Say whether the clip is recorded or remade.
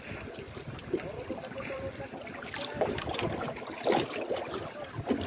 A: recorded